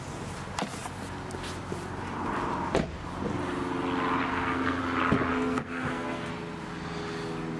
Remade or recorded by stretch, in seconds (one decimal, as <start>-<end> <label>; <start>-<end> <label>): 0.0-4.3 recorded; 4.3-4.8 remade; 4.8-5.3 recorded; 5.3-6.3 remade; 6.3-7.6 recorded